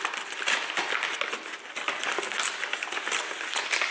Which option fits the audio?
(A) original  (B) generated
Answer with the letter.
A